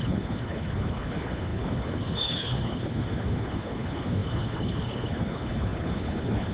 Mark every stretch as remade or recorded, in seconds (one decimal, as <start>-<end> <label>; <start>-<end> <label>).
0.0-6.5 remade